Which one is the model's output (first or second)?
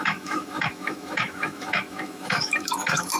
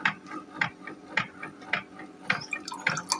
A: first